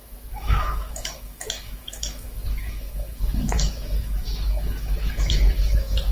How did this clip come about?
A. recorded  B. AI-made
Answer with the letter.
B